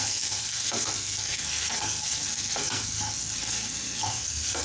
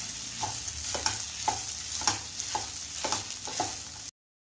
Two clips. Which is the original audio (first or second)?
second